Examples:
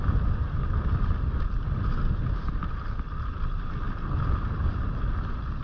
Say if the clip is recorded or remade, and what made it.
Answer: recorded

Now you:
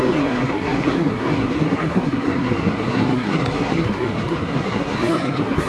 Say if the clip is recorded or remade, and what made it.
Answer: remade, codec, SNAC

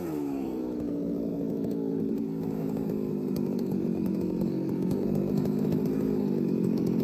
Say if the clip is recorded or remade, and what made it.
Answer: remade, codec, SNAC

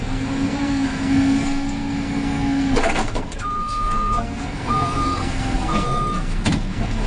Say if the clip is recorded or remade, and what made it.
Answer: remade, codec, SNAC